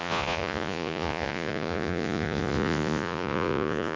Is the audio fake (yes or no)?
yes